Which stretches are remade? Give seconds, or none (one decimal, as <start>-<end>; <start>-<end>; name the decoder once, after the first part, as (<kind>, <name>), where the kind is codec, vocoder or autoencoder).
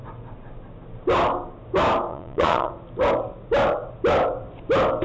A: 2.1-2.7 (vocoder, Vocos)